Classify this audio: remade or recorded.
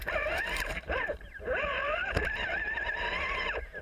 remade